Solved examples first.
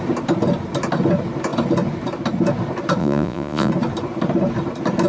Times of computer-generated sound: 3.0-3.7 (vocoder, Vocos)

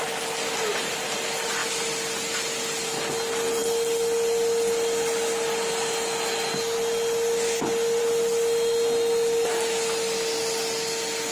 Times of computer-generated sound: none

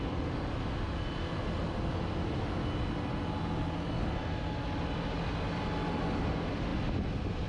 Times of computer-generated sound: none

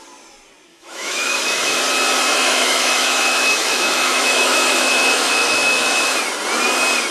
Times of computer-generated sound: 0.7-1.8 (autoencoder, DAC-VAE); 2.3-6.1